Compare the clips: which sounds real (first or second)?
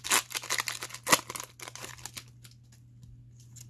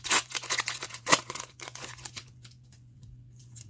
first